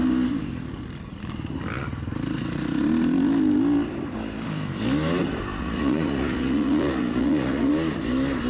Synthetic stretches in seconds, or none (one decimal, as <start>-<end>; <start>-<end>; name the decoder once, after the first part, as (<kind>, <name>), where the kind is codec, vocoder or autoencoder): 5.6-7.7 (vocoder, Vocos)